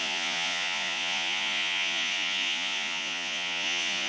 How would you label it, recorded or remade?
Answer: remade